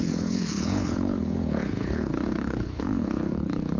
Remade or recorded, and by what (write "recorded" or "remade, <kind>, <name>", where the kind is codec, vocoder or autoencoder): remade, codec, HILCodec